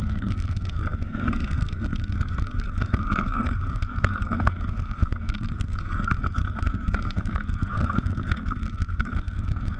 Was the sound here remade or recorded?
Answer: remade